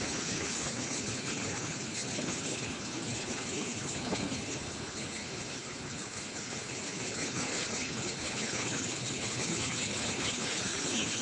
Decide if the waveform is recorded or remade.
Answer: remade